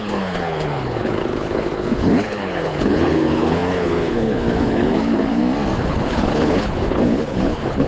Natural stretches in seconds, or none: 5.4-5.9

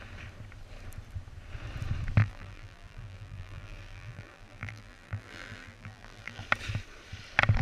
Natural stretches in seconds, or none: 0.0-2.2; 6.4-7.6

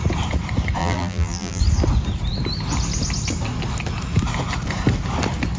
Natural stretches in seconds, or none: 0.0-0.8; 1.6-5.6

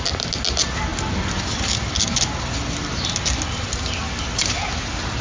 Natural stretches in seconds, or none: 0.0-5.2

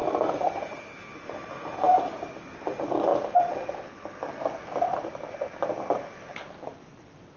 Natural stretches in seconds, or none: 0.0-7.4

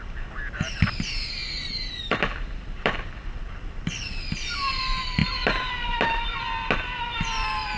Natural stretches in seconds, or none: none

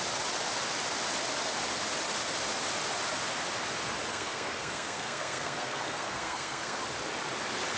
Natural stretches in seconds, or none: 0.0-4.1; 6.8-7.8

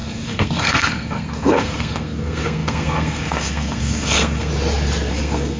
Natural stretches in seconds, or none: 4.5-5.1